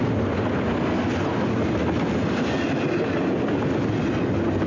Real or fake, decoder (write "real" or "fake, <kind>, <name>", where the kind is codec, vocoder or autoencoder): real